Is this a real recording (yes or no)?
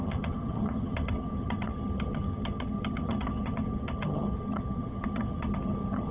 no